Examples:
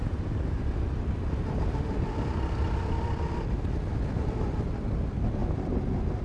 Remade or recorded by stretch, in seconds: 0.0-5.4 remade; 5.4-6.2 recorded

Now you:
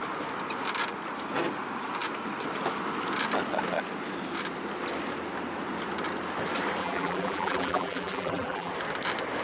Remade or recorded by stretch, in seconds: 0.0-6.8 recorded; 6.8-8.7 remade; 8.7-9.4 recorded

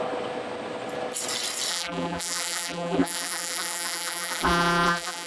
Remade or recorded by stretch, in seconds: 0.0-1.7 recorded; 1.7-5.3 remade

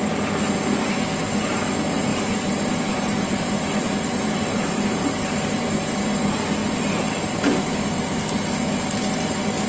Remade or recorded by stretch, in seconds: 0.0-2.1 recorded; 2.1-5.8 remade; 5.8-6.6 recorded; 6.6-7.7 remade; 7.7-9.7 recorded